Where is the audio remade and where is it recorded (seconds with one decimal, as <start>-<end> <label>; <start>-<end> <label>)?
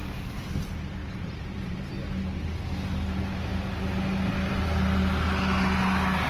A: 0.0-0.5 remade; 0.5-1.0 recorded; 1.0-1.8 remade; 1.8-6.3 recorded